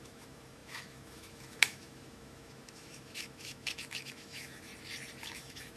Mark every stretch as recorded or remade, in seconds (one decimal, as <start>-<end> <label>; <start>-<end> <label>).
0.0-4.7 remade; 4.7-5.2 recorded; 5.2-5.8 remade